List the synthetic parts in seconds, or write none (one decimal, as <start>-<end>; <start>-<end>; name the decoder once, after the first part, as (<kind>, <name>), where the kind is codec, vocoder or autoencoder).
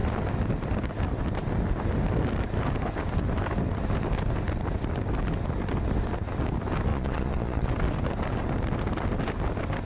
6.9-7.7 (vocoder, Vocos)